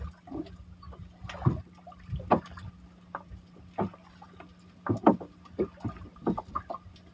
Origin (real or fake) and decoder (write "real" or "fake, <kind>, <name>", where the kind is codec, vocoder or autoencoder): real